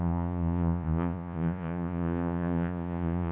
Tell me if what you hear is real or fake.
fake